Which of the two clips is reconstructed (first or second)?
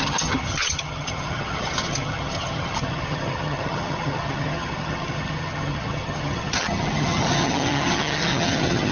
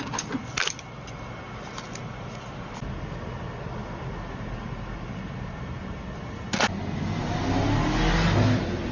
first